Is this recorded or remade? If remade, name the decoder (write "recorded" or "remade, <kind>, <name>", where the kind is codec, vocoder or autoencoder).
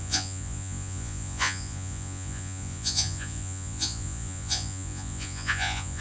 remade, vocoder, Vocos